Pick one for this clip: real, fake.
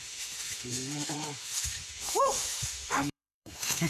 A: fake